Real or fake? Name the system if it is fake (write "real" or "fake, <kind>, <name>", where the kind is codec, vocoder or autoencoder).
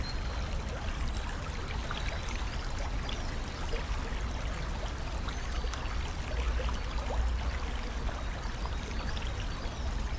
real